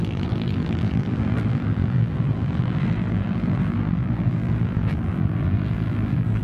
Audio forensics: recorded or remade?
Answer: remade